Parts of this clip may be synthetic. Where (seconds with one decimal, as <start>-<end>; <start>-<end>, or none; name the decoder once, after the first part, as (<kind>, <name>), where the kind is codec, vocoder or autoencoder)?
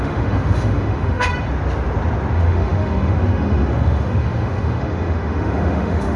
0.0-1.3 (autoencoder, DAC-VAE); 2.3-6.2